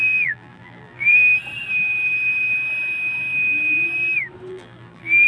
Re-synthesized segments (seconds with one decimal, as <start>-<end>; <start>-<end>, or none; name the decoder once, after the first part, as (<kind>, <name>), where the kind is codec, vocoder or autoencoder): 0.0-1.3 (vocoder, BigVGAN v2); 4.5-5.3